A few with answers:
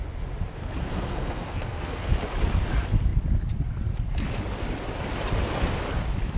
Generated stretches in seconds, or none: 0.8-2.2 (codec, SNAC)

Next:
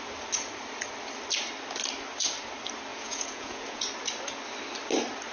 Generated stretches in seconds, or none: 2.9-3.9 (vocoder, Vocos)

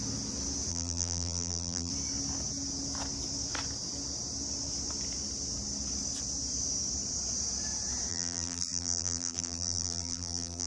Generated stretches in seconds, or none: 0.7-1.9 (vocoder, BigVGAN v2); 8.1-10.7

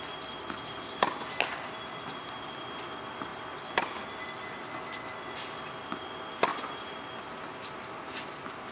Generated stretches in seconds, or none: none